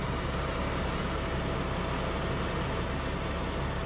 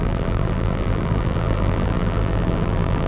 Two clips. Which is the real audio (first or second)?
first